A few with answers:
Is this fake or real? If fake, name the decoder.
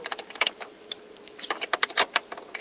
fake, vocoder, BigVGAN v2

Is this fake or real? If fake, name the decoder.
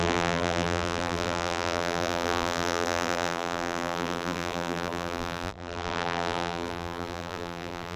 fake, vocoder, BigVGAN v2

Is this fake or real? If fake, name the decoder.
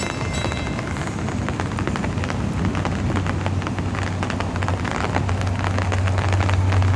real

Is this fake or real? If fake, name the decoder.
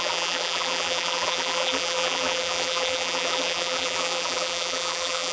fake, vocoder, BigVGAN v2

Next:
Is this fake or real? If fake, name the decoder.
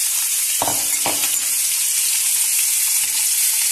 real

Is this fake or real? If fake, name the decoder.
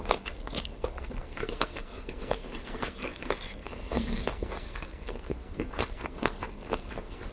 fake, codec, SNAC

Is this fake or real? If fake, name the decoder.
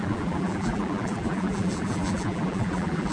fake, vocoder, BigVGAN v2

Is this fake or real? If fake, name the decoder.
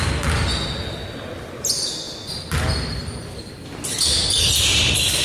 real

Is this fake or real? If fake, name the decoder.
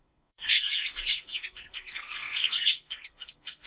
fake, codec, SNAC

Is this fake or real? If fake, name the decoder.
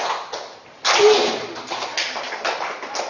real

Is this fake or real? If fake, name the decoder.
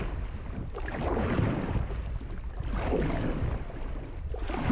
real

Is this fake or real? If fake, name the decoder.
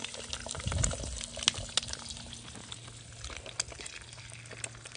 real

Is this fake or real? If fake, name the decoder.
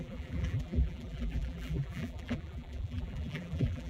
fake, vocoder, BigVGAN v2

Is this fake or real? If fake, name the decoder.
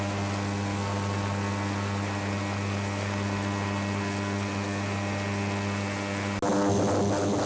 real